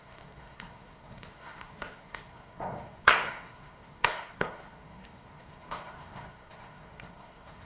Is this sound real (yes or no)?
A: no